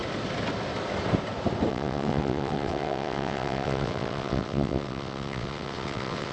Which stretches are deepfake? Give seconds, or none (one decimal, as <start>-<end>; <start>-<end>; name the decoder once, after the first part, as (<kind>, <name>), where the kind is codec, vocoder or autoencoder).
1.7-6.3 (vocoder, WaveNeXt)